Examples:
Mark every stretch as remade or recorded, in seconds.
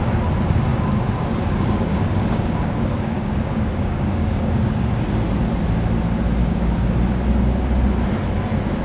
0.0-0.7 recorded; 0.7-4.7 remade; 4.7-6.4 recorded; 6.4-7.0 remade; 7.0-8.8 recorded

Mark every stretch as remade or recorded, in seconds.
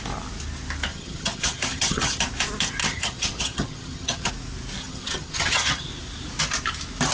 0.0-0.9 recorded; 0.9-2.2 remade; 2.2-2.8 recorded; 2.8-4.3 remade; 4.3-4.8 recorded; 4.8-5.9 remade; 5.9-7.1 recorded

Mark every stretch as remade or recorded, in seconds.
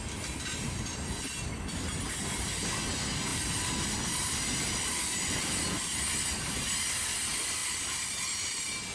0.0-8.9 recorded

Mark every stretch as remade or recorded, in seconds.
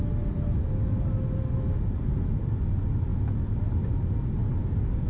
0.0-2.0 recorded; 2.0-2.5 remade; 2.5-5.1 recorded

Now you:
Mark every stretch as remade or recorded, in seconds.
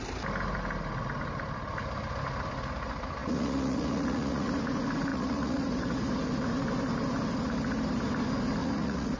0.0-3.2 recorded; 3.2-4.5 remade; 4.5-5.1 recorded; 5.1-5.7 remade; 5.7-8.6 recorded; 8.6-9.2 remade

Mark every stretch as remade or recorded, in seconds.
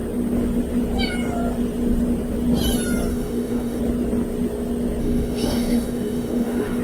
0.0-3.1 recorded; 3.1-3.8 remade; 3.8-5.0 recorded; 5.0-6.8 remade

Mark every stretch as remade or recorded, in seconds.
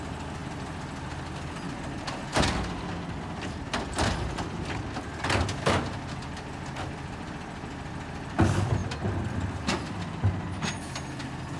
0.0-11.6 recorded